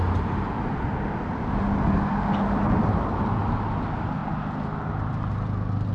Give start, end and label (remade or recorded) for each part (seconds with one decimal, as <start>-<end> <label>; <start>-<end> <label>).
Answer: 0.0-5.9 recorded